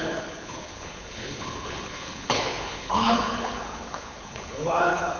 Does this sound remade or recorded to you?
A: remade